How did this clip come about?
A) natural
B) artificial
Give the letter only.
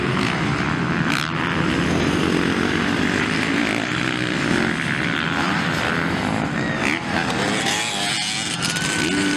A